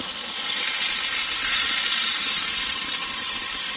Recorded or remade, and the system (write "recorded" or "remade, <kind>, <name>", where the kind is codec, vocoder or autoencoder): remade, vocoder, BigVGAN v2